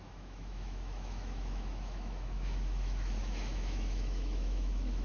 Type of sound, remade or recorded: remade